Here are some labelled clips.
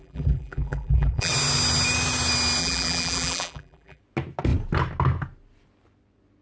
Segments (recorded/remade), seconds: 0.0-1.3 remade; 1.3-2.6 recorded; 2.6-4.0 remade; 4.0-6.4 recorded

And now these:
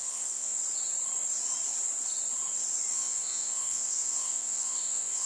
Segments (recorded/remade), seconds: 0.0-0.6 remade; 0.6-2.9 recorded; 2.9-5.3 remade

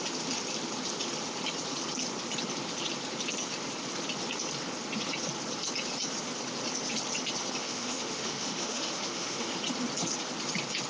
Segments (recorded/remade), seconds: 0.0-7.6 recorded; 7.6-9.5 remade; 9.5-10.9 recorded

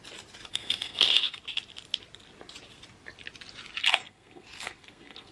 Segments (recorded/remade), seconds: 0.0-0.5 recorded; 0.5-1.4 remade; 1.4-3.8 recorded; 3.8-5.3 remade

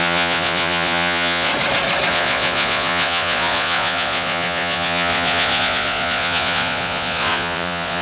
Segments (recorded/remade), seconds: 0.0-1.5 remade; 1.5-2.1 recorded; 2.1-8.0 remade

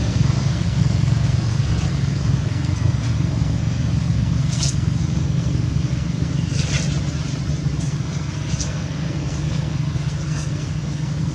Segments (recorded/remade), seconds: 0.0-6.7 remade; 6.7-7.8 recorded; 7.8-11.3 remade

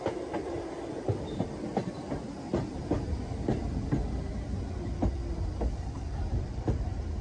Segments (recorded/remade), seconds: 0.0-7.2 remade